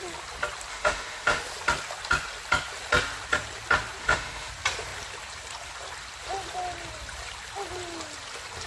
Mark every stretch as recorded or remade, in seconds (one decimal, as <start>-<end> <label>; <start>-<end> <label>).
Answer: 0.0-0.7 recorded; 0.7-1.4 remade; 1.4-4.0 recorded; 4.0-4.5 remade; 4.5-8.7 recorded